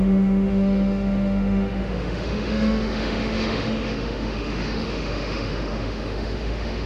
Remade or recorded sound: remade